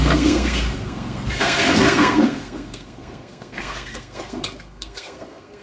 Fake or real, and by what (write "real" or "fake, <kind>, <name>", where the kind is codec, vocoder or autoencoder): fake, codec, SNAC